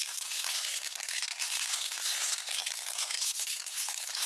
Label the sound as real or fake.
fake